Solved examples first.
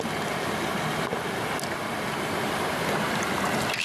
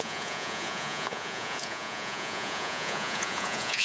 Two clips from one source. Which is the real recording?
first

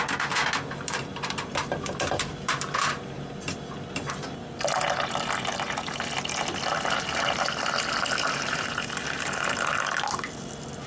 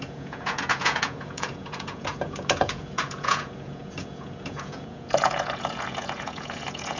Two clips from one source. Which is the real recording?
first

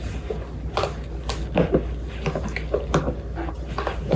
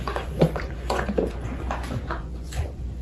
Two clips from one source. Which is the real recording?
first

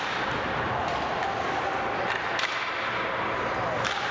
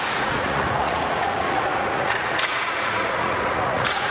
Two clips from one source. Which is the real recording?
first